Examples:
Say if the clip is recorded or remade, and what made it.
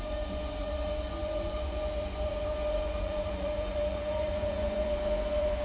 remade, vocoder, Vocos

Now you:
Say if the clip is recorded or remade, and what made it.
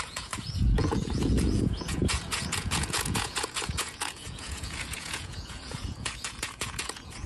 remade, vocoder, Vocos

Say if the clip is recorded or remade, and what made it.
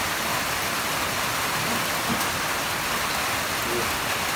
recorded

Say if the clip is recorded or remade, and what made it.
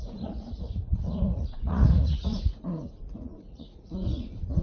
remade, vocoder, Vocos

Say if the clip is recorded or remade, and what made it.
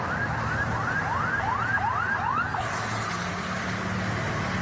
recorded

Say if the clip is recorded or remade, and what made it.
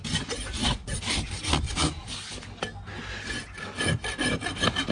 recorded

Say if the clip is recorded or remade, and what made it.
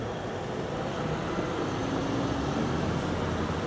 recorded